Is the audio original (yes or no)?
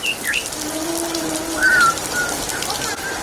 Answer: yes